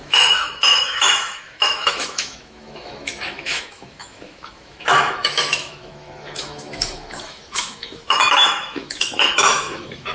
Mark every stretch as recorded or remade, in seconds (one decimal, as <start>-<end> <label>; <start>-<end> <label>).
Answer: 0.0-10.1 remade